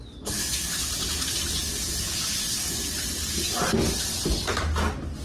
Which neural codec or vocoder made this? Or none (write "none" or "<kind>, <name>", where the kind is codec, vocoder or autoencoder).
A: none